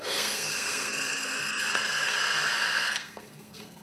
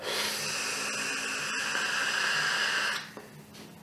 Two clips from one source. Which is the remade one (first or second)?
first